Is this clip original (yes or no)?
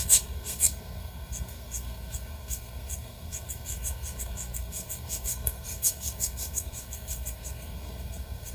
no